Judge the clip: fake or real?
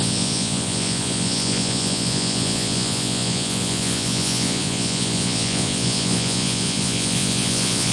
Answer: fake